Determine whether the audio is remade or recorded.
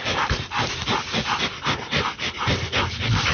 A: recorded